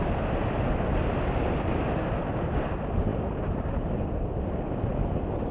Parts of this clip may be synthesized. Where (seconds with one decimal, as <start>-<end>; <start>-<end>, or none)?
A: none